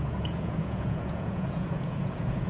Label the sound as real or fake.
fake